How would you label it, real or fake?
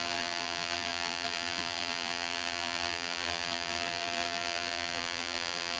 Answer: fake